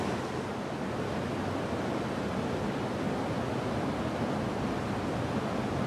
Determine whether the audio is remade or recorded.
recorded